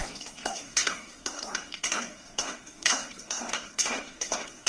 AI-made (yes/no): yes